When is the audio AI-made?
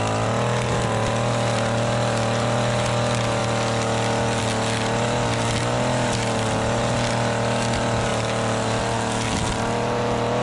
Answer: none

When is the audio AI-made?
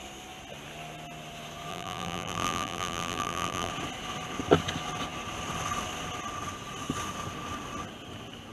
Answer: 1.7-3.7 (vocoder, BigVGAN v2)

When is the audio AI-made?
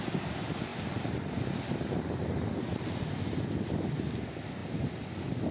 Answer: 0.7-3.0 (vocoder, BigVGAN v2)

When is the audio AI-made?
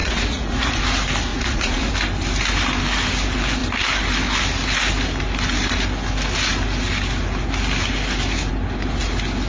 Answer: 0.0-0.8 (vocoder, Vocos); 1.3-1.9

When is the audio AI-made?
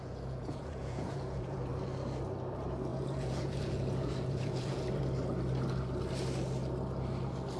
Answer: 0.0-1.7 (vocoder, Vocos); 2.9-5.0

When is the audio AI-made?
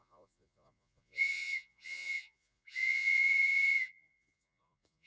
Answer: 0.0-5.1 (vocoder, Vocos)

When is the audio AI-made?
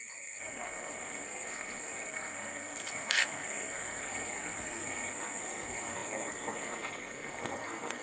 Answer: 0.0-8.0 (codec, SNAC)